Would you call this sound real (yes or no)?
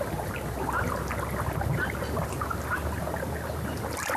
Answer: yes